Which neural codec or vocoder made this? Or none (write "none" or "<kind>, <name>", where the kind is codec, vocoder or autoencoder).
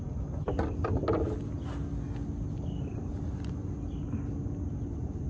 none